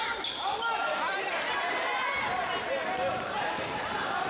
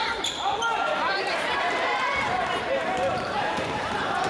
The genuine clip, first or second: first